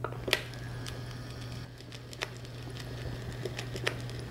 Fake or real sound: real